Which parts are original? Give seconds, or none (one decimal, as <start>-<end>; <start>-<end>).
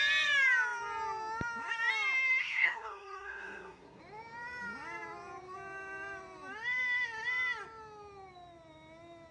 0.0-2.4; 4.0-9.3